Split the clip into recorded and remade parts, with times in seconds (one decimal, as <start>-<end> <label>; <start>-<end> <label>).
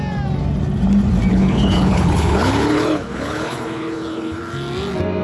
0.0-1.3 recorded; 1.3-4.4 remade; 4.4-5.2 recorded